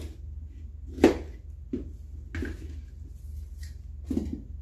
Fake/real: real